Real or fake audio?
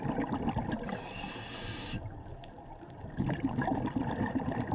real